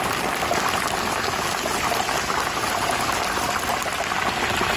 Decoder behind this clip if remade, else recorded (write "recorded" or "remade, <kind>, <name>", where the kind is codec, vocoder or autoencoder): recorded